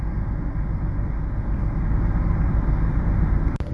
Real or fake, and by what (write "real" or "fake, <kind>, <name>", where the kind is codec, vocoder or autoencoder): real